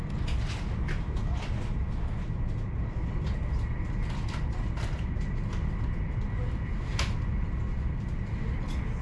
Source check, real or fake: real